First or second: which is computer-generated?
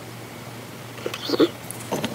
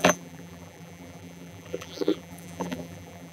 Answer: second